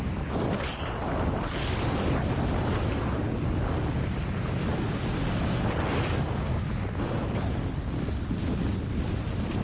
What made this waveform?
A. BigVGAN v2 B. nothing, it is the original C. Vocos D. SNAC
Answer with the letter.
B